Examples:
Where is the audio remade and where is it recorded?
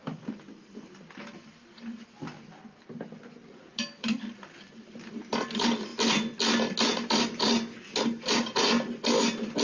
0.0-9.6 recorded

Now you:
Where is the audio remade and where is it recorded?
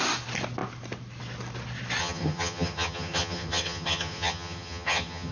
0.0-2.0 recorded; 2.0-5.3 remade